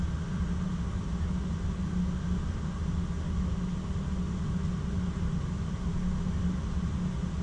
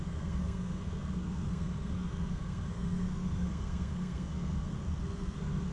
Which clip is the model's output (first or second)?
second